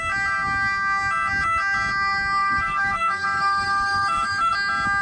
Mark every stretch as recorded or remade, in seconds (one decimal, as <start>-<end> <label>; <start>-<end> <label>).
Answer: 0.0-2.4 recorded; 2.4-4.5 remade; 4.5-5.0 recorded